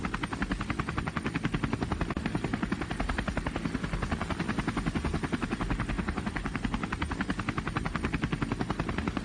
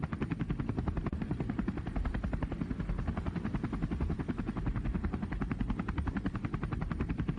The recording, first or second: first